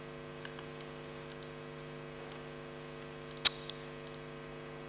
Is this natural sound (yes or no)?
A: yes